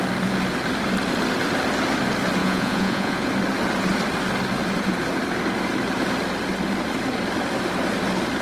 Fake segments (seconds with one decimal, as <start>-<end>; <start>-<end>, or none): 2.4-3.3

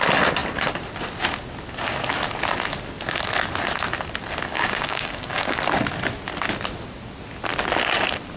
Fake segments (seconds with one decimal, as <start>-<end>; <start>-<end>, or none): 4.5-5.6

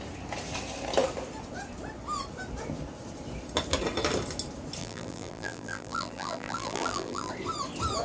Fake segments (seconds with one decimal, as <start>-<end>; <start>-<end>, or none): 4.8-7.3

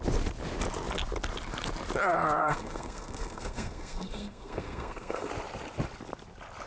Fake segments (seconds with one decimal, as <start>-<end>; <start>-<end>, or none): 2.4-5.3

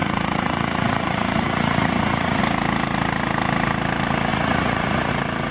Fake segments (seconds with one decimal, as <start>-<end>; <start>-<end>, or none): 0.0-2.4; 4.3-5.1

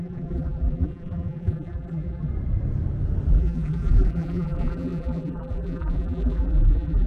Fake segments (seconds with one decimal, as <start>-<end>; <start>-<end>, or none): 0.0-2.3; 3.3-7.1

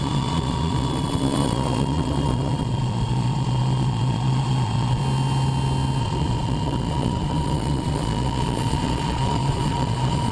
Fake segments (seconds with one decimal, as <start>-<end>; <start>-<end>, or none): 0.0-5.0; 6.0-10.3

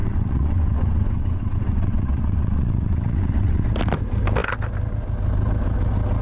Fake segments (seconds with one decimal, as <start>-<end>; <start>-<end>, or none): 0.0-3.7